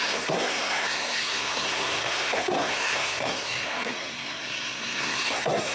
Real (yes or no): no